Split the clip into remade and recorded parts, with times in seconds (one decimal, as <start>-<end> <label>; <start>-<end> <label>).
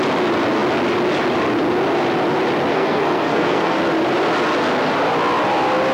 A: 0.0-2.7 recorded; 2.7-3.8 remade; 3.8-5.9 recorded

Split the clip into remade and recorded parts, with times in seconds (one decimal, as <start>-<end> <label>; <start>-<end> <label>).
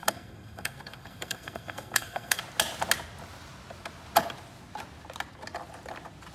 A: 0.0-2.4 remade; 2.4-6.3 recorded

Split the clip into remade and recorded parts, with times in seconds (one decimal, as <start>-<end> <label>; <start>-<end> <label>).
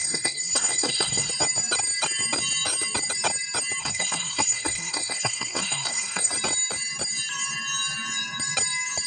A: 0.0-1.3 remade; 1.3-3.8 recorded; 3.8-6.3 remade; 6.3-9.1 recorded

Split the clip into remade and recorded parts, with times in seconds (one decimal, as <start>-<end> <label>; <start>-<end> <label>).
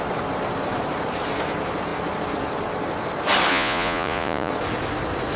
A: 0.0-3.5 recorded; 3.5-4.5 remade; 4.5-5.4 recorded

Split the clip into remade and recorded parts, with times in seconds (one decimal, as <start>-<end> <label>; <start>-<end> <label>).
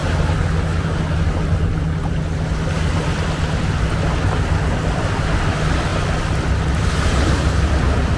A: 0.0-4.9 recorded; 4.9-8.2 remade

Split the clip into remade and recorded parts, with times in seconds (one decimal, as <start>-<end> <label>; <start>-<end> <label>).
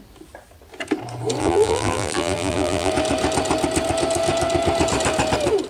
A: 0.0-1.4 recorded; 1.4-2.9 remade; 2.9-5.7 recorded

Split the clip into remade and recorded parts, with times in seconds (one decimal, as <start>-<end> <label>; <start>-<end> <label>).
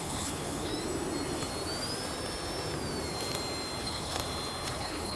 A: 0.0-0.7 remade; 0.7-3.8 recorded; 3.8-4.2 remade; 4.2-4.7 recorded; 4.7-5.2 remade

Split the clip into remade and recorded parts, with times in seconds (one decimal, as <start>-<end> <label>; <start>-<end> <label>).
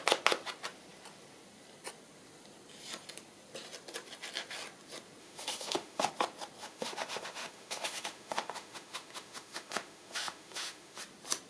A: 0.0-5.2 recorded; 5.2-6.1 remade; 6.1-6.6 recorded; 6.6-11.0 remade; 11.0-11.5 recorded